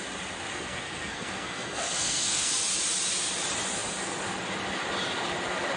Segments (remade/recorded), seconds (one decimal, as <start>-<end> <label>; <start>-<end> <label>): 0.0-0.5 recorded; 0.5-2.5 remade; 2.5-5.8 recorded

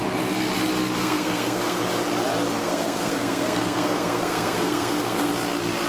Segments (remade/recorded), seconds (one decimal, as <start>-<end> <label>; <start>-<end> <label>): 0.0-1.0 recorded; 1.0-1.8 remade; 1.8-2.6 recorded; 2.6-5.3 remade; 5.3-5.9 recorded